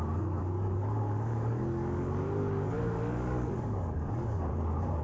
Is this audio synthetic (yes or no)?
yes